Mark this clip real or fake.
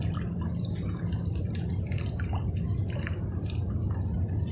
real